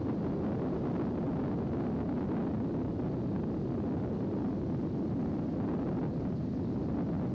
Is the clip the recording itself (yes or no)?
yes